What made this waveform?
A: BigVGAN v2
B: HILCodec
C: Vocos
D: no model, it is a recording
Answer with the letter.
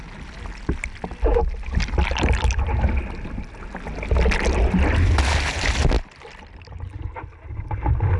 D